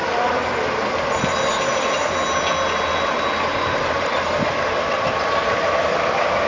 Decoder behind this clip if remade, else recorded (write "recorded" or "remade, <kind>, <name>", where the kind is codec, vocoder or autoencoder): recorded